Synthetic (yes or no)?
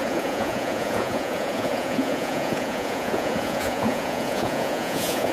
yes